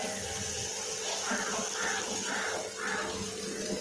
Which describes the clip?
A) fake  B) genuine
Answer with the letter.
B